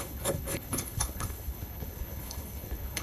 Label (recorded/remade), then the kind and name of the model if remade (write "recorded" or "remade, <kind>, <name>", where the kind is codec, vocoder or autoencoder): remade, codec, HILCodec